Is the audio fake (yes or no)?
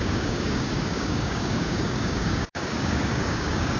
yes